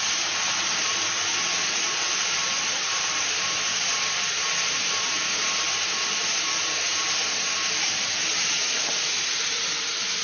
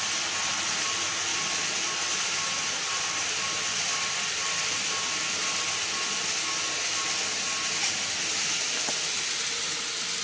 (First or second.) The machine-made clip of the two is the first